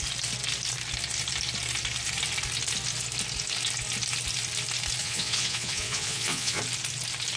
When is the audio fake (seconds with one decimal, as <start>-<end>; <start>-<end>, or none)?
5.0-6.6